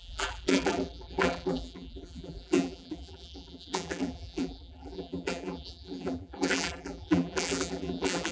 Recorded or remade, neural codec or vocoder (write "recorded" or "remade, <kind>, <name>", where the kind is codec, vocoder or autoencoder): remade, vocoder, BigVGAN v2